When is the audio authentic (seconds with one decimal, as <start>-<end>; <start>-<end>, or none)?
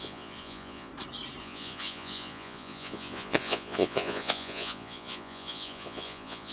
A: 0.9-1.4